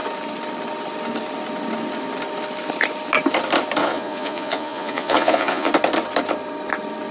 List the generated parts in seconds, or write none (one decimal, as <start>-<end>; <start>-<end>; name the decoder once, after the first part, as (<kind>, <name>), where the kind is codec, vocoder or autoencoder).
3.8-5.7 (vocoder, Vocos)